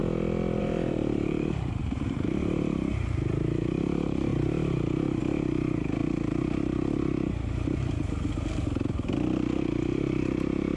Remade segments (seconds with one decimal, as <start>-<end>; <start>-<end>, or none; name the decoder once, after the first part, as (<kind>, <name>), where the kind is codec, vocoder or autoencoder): 0.6-6.0 (vocoder, BigVGAN v2); 8.9-10.8

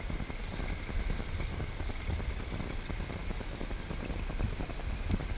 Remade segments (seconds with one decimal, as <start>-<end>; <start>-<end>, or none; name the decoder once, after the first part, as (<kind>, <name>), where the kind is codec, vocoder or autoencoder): none

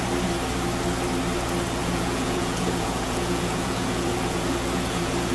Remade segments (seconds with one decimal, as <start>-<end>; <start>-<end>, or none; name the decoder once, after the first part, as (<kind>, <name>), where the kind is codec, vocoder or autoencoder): 1.8-5.3 (vocoder, Vocos)

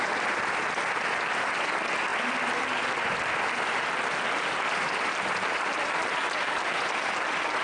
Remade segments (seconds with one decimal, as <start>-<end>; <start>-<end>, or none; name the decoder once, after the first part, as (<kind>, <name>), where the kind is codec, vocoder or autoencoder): none

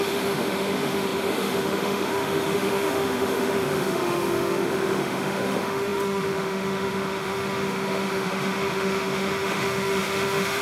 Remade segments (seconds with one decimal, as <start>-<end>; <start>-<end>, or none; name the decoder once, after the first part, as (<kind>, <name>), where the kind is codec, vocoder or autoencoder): 0.0-10.6 (autoencoder, DAC-VAE)

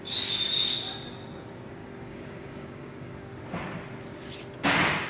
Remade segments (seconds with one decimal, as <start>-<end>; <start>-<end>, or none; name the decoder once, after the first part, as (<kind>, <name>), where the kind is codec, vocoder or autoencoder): 1.8-3.3 (codec, DAC)

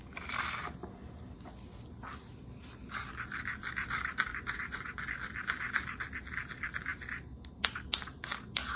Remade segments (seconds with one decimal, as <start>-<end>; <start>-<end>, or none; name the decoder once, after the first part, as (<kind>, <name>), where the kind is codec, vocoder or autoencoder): 4.3-5.0 (vocoder, Vocos)

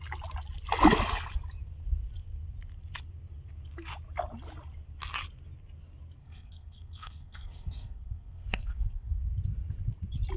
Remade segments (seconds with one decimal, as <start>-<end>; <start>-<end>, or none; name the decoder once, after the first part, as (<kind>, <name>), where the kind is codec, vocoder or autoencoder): 6.2-9.2 (codec, SNAC)